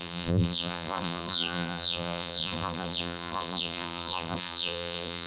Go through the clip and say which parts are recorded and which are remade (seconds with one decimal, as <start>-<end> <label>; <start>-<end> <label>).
0.0-5.3 remade